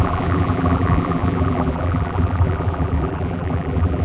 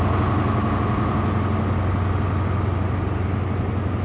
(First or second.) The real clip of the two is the second